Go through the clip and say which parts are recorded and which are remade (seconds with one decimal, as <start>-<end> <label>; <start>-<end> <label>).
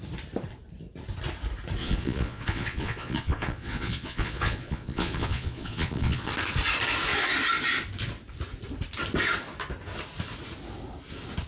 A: 0.0-1.8 recorded; 1.8-6.3 remade; 6.3-11.5 recorded